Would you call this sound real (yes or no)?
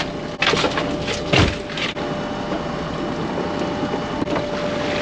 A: yes